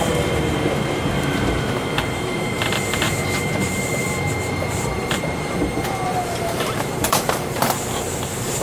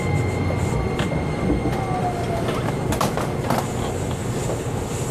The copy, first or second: first